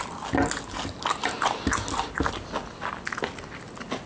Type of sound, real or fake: real